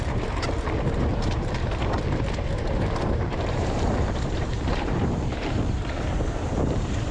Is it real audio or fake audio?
fake